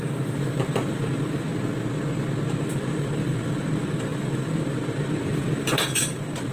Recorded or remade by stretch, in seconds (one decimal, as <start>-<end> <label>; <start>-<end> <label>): 0.0-1.5 remade; 1.5-2.6 recorded; 2.6-6.5 remade

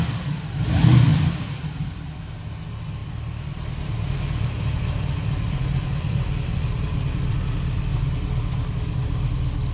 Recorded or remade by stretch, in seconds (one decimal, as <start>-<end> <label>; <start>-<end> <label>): 0.0-1.1 recorded; 1.1-2.2 remade; 2.2-3.0 recorded; 3.0-7.4 remade; 7.4-9.7 recorded

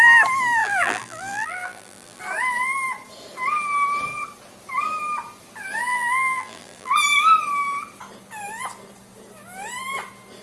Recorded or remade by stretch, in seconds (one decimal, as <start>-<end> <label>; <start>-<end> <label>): 0.0-0.6 recorded; 0.6-2.2 remade; 2.2-5.9 recorded; 5.9-6.9 remade; 6.9-10.4 recorded

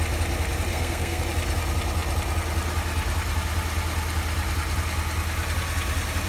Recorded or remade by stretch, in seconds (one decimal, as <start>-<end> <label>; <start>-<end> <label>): 0.0-0.7 recorded; 0.7-1.2 remade; 1.2-6.3 recorded